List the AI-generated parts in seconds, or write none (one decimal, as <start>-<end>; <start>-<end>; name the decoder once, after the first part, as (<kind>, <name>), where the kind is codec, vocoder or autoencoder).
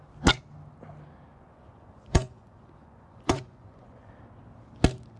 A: 1.3-4.1 (vocoder, Vocos)